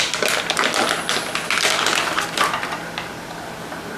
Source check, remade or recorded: recorded